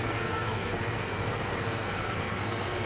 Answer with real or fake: fake